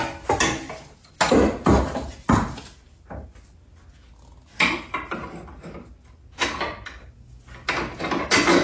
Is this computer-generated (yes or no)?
no